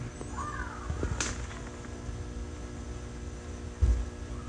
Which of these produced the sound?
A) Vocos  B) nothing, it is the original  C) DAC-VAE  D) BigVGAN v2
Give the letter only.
B